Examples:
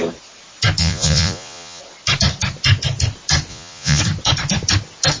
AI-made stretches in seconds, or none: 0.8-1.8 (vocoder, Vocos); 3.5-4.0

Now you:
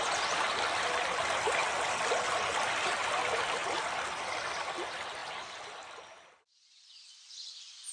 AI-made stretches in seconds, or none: none

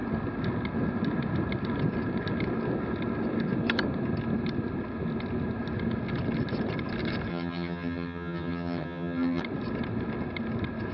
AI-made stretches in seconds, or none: 7.3-9.4 (vocoder, HiFi-GAN)

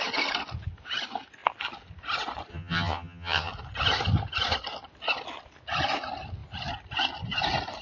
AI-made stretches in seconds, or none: 2.5-3.5 (vocoder, HiFi-GAN)

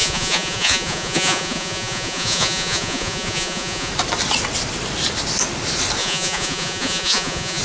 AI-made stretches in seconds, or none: 0.0-3.9 (vocoder, Vocos); 6.0-7.6